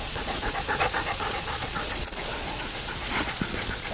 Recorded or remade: remade